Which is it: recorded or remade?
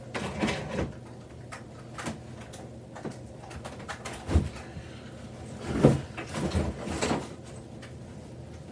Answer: recorded